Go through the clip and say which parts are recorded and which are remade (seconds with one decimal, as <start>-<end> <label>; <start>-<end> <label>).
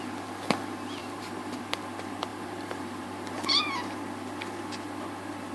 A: 0.0-1.0 recorded; 1.0-1.6 remade; 1.6-2.3 recorded; 2.3-3.6 remade; 3.6-5.5 recorded